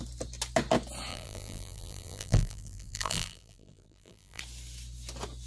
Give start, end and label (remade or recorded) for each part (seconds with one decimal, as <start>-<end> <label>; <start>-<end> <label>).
0.0-1.1 recorded; 1.1-4.4 remade; 4.4-5.5 recorded